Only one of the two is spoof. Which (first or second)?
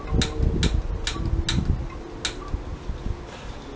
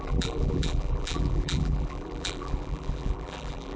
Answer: second